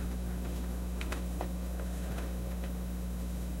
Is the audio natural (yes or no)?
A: no